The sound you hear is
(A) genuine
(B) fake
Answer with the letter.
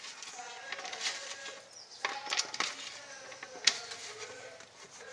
A